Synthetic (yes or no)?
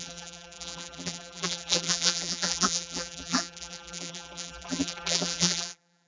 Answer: yes